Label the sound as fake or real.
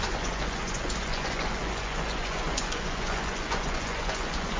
fake